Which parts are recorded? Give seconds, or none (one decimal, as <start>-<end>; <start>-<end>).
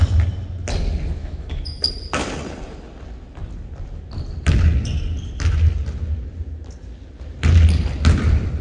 0.0-1.2; 1.8-8.6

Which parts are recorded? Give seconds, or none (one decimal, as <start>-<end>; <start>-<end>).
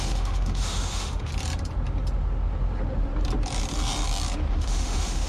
1.3-4.5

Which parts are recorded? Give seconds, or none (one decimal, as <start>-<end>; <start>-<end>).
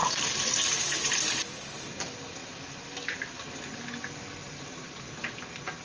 0.0-5.8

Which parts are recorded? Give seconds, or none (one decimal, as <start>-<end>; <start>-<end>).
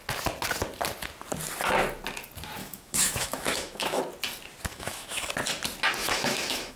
0.0-2.6; 4.0-4.7; 5.3-6.0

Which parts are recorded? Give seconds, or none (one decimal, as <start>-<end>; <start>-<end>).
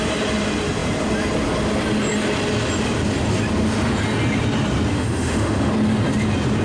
0.0-4.9; 5.7-6.6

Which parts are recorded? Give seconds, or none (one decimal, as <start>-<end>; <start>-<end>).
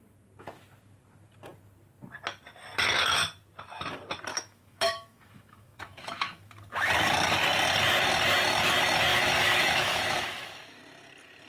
0.0-4.3; 6.9-9.1; 10.8-11.5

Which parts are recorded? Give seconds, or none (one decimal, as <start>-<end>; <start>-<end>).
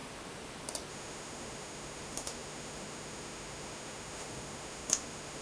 0.0-0.9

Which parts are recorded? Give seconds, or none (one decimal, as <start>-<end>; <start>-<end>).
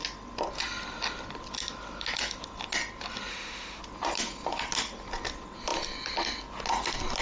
0.0-3.3; 3.8-7.2